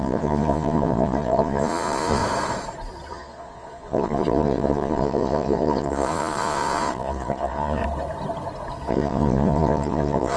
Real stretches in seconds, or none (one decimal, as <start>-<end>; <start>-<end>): 2.2-3.1; 7.8-8.9